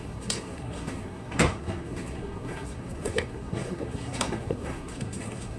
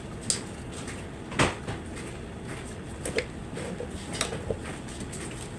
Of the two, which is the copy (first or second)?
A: first